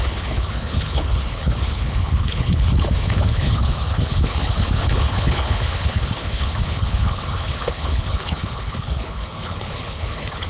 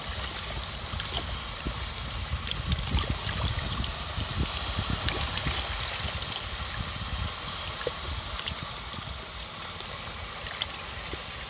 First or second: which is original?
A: second